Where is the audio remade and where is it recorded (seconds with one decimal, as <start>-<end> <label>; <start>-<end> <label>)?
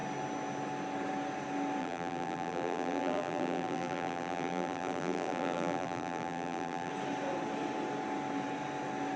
0.0-1.8 recorded; 1.8-6.9 remade; 6.9-9.2 recorded